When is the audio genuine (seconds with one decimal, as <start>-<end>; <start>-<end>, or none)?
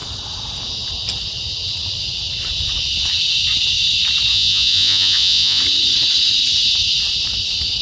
0.0-4.3; 5.6-7.8